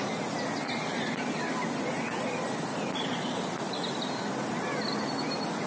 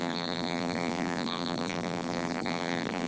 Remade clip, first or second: second